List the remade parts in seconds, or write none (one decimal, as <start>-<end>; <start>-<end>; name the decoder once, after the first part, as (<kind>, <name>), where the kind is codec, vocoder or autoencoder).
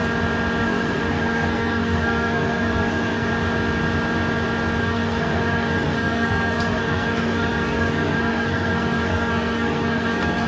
0.6-3.3 (codec, SNAC); 4.8-10.5